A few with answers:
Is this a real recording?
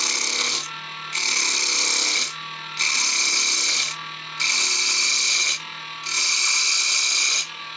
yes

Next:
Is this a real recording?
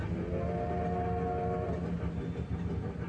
yes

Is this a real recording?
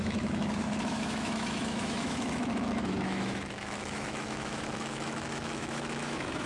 no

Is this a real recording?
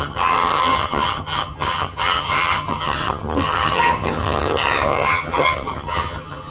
no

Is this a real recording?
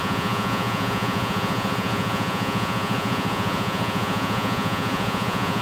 no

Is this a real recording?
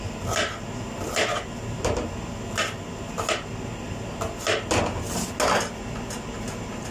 yes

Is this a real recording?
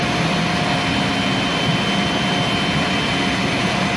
yes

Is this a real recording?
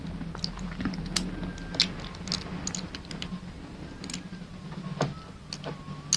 yes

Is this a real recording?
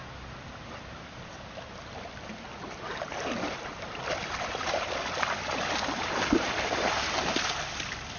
yes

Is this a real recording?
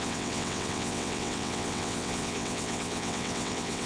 no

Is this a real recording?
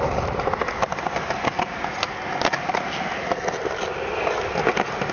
yes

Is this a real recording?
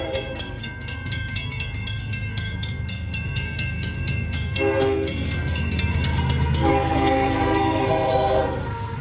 no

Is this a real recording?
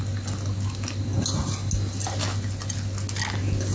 yes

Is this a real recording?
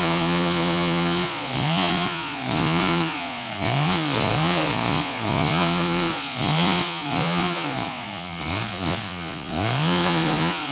no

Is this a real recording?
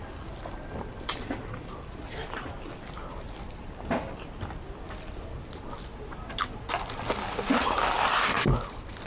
yes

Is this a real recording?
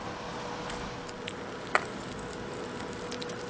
yes